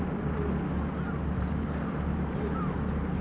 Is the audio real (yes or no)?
yes